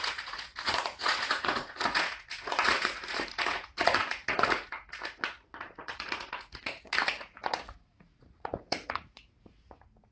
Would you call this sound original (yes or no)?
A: no